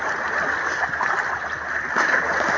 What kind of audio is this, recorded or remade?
recorded